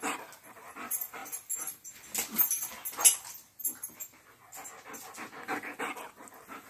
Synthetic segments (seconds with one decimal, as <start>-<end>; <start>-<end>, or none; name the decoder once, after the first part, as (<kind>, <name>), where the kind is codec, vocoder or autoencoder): none